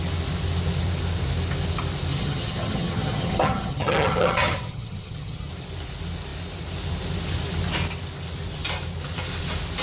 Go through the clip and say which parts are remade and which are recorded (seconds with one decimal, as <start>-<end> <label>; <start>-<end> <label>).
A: 0.0-2.1 recorded; 2.1-5.5 remade; 5.5-9.8 recorded